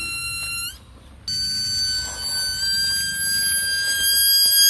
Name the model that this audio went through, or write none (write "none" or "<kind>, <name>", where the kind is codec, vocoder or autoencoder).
none